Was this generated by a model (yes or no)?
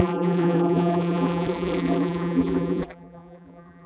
yes